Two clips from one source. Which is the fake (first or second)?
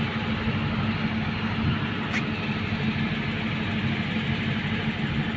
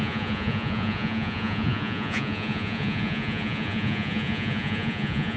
second